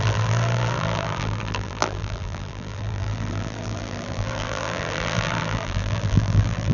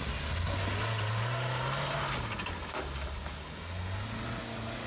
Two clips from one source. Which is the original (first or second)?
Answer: second